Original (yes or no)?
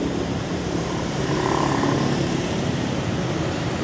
no